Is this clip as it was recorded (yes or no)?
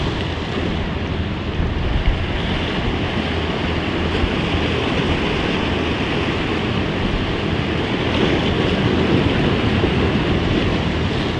yes